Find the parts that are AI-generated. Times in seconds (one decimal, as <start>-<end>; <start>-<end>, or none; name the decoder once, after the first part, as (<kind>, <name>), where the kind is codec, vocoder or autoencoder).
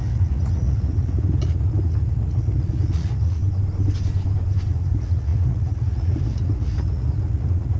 0.0-3.4 (vocoder, Vocos); 4.7-7.8